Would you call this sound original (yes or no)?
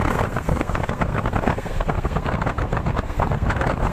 no